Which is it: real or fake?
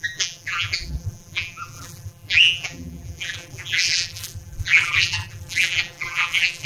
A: fake